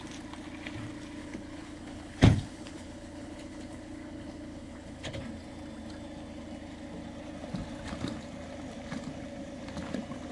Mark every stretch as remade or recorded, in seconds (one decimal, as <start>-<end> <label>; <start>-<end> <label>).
0.0-1.2 recorded; 1.2-5.2 remade; 5.2-10.3 recorded